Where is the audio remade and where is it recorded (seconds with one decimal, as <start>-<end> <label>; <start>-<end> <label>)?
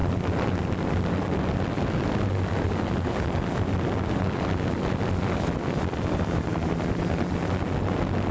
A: 0.0-8.3 recorded